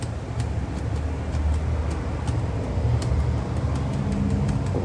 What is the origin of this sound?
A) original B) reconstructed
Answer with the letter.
A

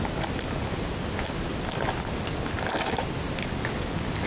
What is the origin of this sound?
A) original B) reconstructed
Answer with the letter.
A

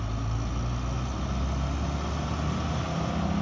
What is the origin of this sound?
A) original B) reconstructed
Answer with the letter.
A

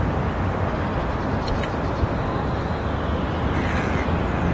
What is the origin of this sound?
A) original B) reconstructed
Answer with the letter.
A